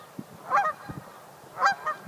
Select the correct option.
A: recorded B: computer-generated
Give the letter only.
A